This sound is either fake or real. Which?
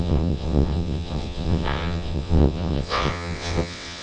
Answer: fake